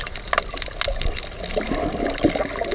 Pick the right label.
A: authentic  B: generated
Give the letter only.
A